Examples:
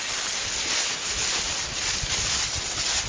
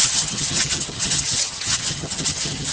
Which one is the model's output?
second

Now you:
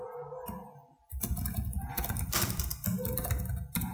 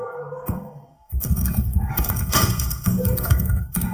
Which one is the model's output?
second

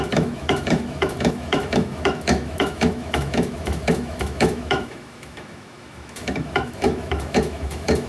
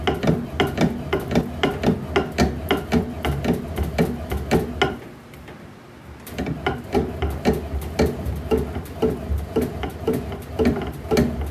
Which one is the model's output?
first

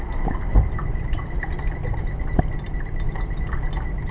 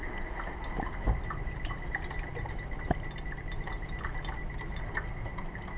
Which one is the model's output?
first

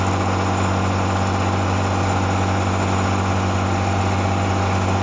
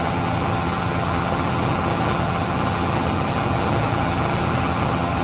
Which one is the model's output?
second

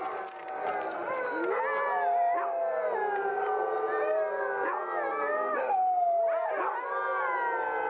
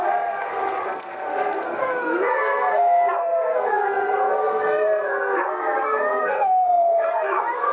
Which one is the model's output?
second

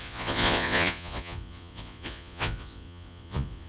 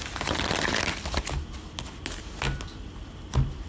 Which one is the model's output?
first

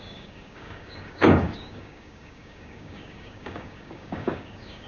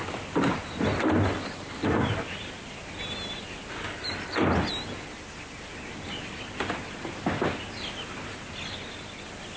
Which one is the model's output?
first